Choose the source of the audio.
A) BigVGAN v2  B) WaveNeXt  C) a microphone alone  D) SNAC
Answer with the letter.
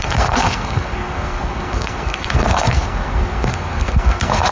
D